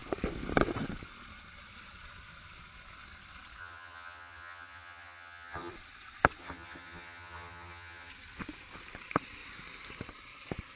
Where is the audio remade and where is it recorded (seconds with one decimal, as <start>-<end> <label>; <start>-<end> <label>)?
0.0-3.6 recorded; 3.6-5.7 remade; 5.7-6.4 recorded; 6.4-8.1 remade; 8.1-10.8 recorded